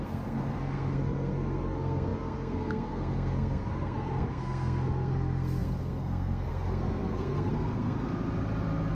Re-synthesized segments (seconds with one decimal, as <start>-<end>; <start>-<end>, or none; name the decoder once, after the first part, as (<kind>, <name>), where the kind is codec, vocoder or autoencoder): 0.0-8.1 (codec, SNAC)